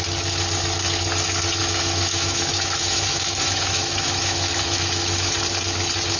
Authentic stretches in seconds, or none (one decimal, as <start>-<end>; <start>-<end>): 0.0-1.6; 5.3-6.2